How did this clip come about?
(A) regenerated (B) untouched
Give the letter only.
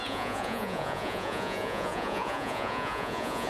A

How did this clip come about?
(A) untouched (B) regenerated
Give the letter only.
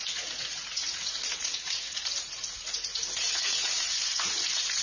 B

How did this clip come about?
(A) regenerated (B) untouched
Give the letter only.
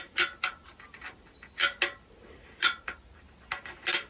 B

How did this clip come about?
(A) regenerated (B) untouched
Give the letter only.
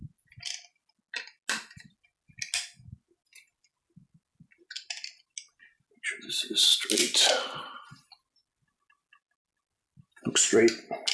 B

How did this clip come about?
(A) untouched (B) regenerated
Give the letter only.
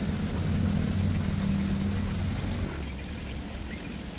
A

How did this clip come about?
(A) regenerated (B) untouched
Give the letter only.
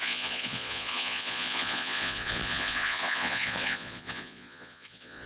A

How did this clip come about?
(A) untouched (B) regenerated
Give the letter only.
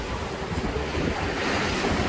A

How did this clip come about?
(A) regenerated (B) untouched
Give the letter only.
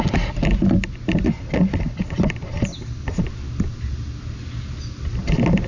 B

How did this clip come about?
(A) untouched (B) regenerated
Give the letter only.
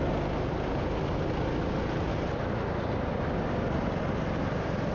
A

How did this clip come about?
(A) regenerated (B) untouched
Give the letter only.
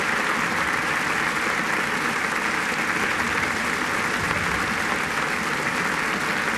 B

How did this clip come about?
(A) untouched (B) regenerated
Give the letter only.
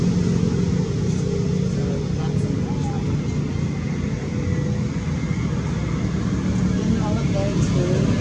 A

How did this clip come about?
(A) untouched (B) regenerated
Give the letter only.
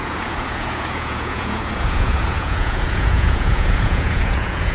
B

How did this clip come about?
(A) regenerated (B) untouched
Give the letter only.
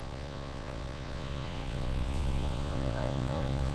A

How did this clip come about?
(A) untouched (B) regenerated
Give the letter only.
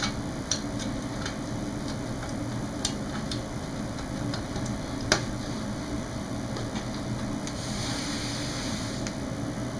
A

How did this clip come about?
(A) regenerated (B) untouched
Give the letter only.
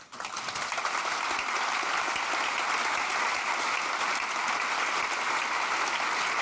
B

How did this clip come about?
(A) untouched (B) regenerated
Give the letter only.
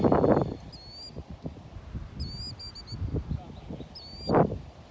A